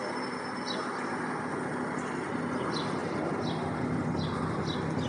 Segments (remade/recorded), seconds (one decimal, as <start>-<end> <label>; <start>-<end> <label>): 0.0-5.1 recorded